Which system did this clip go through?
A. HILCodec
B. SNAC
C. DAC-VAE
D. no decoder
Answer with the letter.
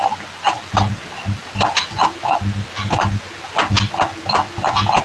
D